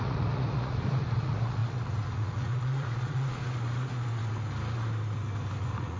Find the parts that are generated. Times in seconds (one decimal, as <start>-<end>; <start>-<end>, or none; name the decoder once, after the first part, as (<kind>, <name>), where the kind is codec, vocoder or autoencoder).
0.0-3.4 (vocoder, Vocos); 5.6-6.0